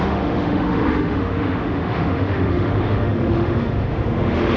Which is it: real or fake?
fake